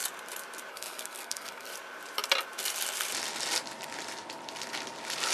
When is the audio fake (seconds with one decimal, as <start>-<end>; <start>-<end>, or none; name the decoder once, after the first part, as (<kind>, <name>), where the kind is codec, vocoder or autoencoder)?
0.7-1.7 (codec, SNAC)